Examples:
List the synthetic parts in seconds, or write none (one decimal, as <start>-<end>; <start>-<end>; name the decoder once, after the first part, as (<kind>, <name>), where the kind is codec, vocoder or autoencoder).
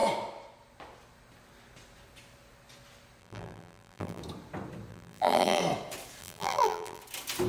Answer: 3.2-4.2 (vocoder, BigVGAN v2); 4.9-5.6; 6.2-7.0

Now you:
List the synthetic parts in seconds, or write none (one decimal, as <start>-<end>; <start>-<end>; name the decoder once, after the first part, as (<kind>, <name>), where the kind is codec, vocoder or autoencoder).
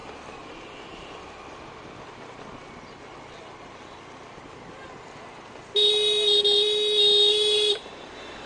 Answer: none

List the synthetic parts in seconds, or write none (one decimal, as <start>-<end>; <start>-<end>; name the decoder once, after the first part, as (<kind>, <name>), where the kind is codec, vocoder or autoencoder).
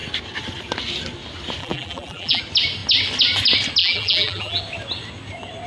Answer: 1.6-2.4 (vocoder, BigVGAN v2); 3.8-4.6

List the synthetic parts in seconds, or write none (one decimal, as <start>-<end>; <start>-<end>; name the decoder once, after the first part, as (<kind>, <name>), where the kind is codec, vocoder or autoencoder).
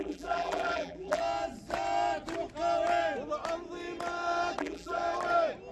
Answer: 0.0-1.2 (vocoder, BigVGAN v2); 4.6-5.0